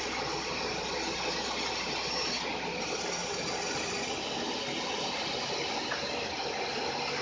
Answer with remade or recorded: recorded